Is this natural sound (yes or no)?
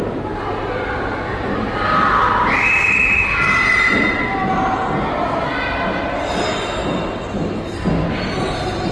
yes